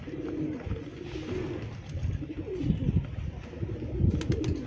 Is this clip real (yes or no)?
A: yes